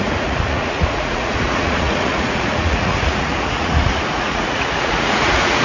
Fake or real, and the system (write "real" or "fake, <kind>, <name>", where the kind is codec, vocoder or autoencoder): fake, vocoder, Vocos